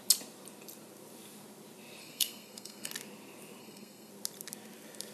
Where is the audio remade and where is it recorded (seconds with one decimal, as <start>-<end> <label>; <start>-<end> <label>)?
0.0-2.0 recorded; 2.0-2.9 remade; 2.9-3.6 recorded; 3.6-4.1 remade; 4.1-5.1 recorded